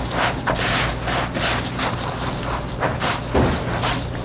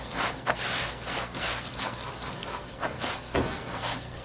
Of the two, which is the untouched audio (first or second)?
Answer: first